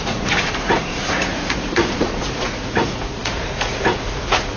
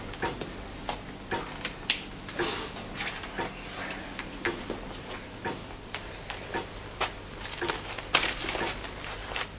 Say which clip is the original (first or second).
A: second